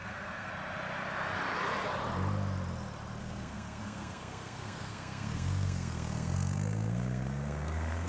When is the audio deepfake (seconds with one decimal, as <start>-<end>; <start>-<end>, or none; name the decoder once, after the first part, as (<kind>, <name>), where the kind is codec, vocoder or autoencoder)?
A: 0.0-0.5 (codec, SNAC); 3.2-8.1